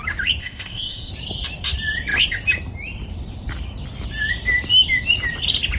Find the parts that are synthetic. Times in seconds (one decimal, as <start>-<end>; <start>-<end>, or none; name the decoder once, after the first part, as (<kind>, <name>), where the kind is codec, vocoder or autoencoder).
0.4-1.1 (codec, ZipCodec)